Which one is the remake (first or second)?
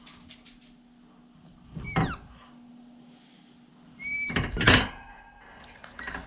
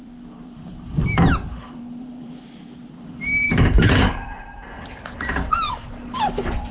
second